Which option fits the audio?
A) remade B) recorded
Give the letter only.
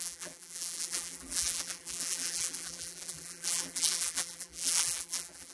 A